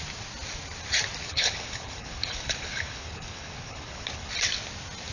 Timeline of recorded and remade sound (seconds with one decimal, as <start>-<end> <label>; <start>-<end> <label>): 0.0-1.2 recorded; 1.2-4.3 remade; 4.3-5.1 recorded